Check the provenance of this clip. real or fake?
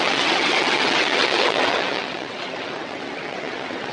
fake